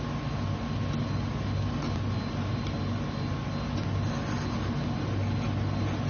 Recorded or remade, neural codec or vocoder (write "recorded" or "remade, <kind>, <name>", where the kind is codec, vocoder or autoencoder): recorded